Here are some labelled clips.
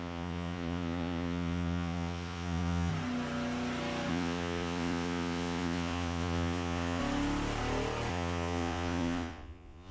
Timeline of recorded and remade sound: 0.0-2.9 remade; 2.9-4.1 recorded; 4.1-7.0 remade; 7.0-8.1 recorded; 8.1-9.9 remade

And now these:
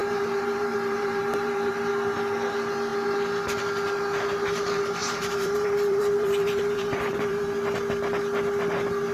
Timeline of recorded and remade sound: 0.0-1.9 remade; 1.9-5.0 recorded; 5.0-7.4 remade; 7.4-9.1 recorded

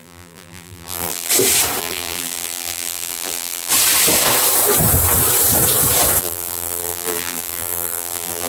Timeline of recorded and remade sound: 0.0-1.3 remade; 1.3-1.8 recorded; 1.8-3.7 remade; 3.7-6.2 recorded; 6.2-8.5 remade

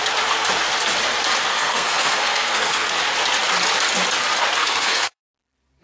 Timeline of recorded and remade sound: 0.0-1.5 recorded; 1.5-2.9 remade; 2.9-4.6 recorded; 4.6-5.2 remade; 5.2-5.8 recorded

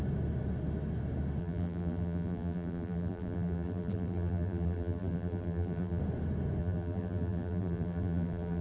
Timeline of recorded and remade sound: 0.0-1.4 recorded; 1.4-6.0 remade; 6.0-6.6 recorded; 6.6-8.6 remade